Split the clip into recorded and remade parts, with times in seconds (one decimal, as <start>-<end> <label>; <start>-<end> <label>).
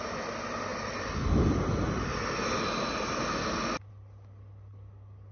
0.0-5.3 recorded